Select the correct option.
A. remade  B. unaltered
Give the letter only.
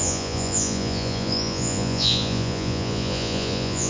A